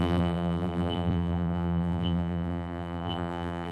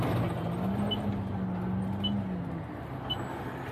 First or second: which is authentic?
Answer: second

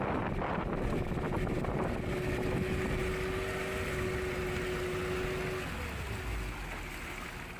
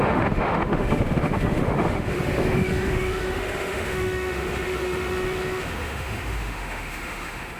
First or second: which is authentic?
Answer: first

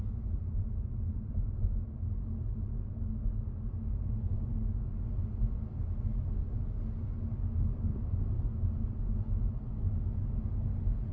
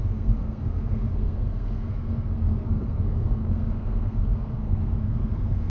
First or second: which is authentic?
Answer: first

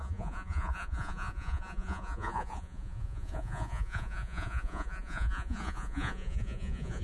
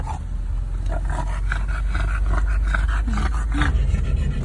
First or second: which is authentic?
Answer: second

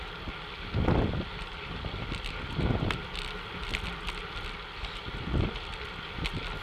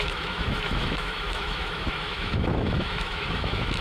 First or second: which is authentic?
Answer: first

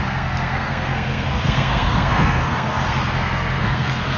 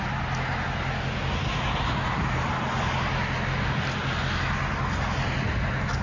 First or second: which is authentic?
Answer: second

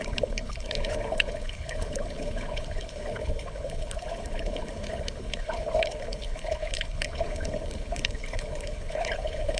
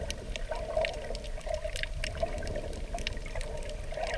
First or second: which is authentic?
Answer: second